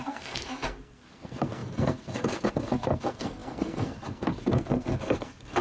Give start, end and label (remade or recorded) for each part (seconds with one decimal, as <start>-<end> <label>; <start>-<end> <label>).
0.0-5.6 remade